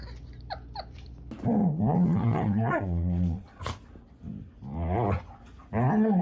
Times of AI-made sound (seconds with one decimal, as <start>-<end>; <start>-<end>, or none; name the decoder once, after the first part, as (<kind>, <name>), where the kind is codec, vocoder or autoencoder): 1.6-3.6 (vocoder, Vocos)